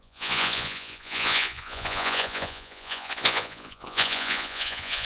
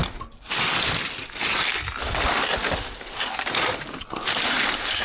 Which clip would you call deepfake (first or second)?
first